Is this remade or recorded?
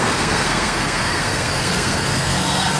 remade